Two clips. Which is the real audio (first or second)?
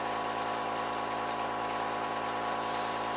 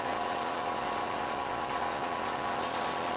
first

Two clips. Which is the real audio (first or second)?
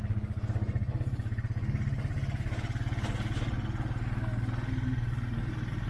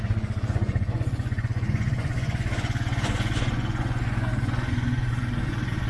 first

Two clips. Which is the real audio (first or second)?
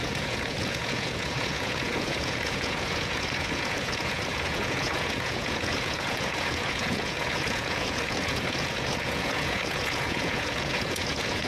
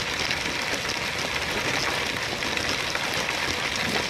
second